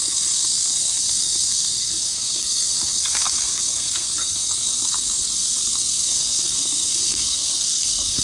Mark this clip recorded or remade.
remade